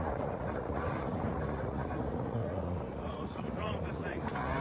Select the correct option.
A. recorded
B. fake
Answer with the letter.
B